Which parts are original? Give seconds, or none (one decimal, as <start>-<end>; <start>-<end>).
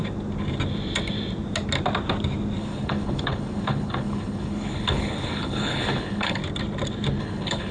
0.0-2.6; 6.4-7.2